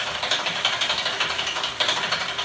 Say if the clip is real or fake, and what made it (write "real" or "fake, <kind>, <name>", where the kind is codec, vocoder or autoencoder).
real